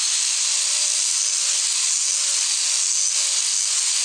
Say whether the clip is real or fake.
real